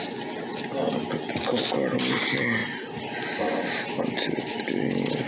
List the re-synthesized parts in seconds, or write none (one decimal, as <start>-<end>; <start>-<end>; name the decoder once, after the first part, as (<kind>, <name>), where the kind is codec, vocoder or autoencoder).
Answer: none